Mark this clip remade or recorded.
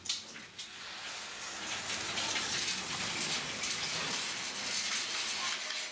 recorded